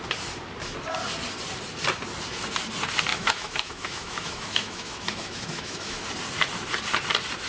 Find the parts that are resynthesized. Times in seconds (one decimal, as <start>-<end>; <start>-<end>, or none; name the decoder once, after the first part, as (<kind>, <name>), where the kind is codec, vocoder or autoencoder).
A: 3.1-6.1 (autoencoder, DAC-VAE)